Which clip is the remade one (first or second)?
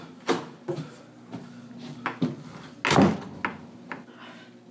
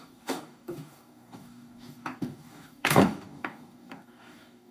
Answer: second